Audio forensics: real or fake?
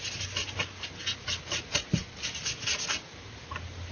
real